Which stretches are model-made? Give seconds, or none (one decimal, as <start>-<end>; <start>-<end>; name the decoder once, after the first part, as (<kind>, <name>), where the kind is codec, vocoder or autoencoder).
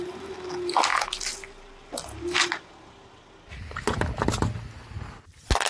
none